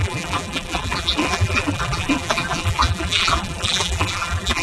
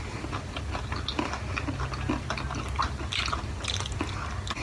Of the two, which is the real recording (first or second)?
second